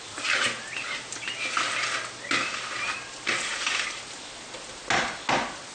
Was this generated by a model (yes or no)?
no